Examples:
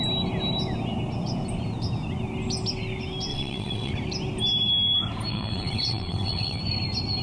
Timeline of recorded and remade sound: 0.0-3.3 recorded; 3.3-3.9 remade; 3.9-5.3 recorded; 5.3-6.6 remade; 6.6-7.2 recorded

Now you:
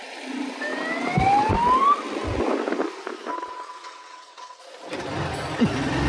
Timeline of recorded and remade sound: 0.0-3.3 recorded; 3.3-4.6 remade; 4.6-6.1 recorded

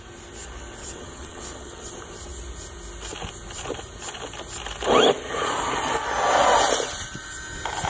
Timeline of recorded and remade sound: 0.0-0.8 recorded; 0.8-1.9 remade; 1.9-7.9 recorded

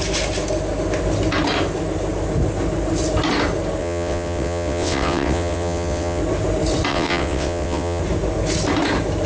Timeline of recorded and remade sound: 0.0-3.8 recorded; 3.8-6.2 remade; 6.2-6.9 recorded; 6.9-8.0 remade; 8.0-9.3 recorded